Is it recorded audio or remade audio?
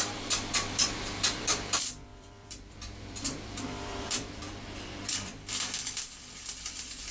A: remade